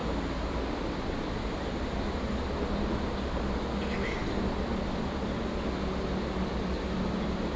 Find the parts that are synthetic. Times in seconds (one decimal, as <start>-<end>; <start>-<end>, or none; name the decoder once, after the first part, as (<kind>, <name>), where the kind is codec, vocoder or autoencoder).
0.0-2.2 (vocoder, BigVGAN v2)